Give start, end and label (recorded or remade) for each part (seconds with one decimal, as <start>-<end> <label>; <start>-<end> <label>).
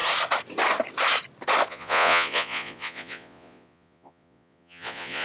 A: 0.0-1.7 recorded; 1.7-5.2 remade